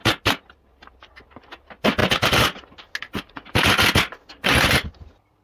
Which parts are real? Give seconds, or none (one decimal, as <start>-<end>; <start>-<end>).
0.0-5.4